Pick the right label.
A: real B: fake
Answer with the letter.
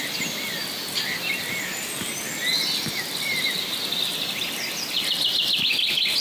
A